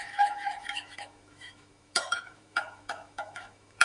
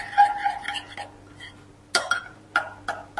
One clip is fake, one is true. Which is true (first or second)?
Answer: second